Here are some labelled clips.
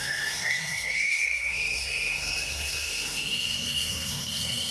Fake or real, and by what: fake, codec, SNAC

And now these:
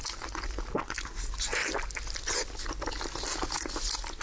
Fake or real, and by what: real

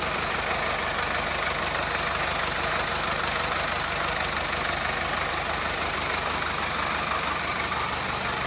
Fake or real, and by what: real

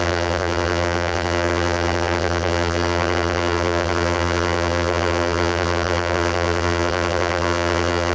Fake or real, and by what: fake, vocoder, BigVGAN v2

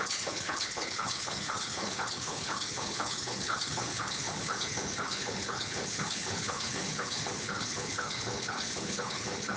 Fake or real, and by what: fake, codec, HILCodec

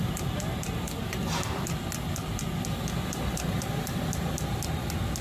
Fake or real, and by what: real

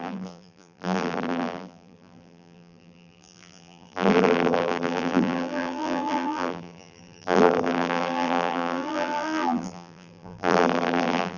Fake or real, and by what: fake, vocoder, BigVGAN v2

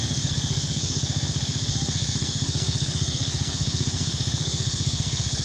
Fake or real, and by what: fake, codec, SNAC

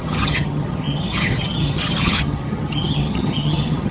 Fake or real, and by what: fake, vocoder, HiFi-GAN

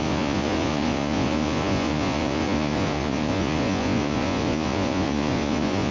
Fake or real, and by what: fake, vocoder, Vocos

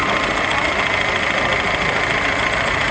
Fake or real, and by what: real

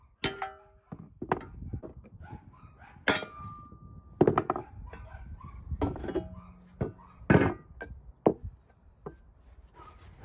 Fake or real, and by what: real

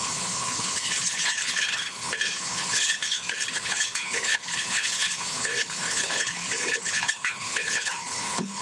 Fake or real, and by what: fake, codec, HILCodec